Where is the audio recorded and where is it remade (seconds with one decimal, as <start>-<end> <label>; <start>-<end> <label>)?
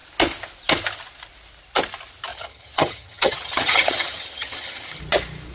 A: 0.0-2.3 recorded; 2.3-5.0 remade; 5.0-5.5 recorded